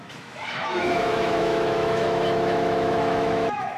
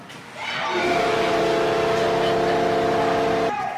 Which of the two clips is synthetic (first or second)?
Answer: first